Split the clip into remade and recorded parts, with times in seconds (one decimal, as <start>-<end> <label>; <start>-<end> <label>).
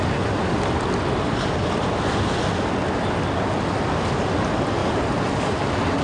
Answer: 0.0-4.8 recorded; 4.8-5.4 remade; 5.4-6.0 recorded